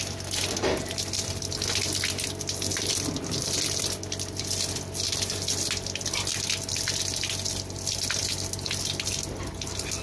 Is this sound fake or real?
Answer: real